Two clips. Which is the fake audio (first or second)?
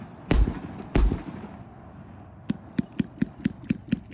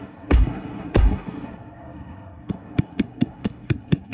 second